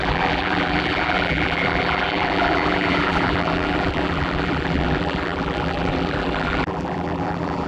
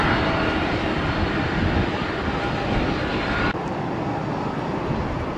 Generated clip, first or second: first